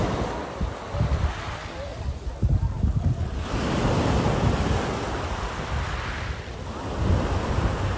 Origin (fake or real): real